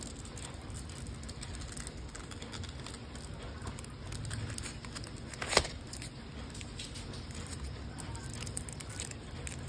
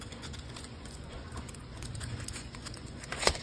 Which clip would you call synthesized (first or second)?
second